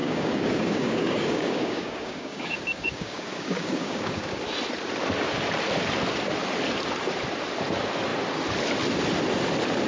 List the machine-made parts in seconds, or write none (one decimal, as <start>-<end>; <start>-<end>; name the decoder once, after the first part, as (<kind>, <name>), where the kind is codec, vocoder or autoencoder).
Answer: 0.0-4.4 (codec, DAC)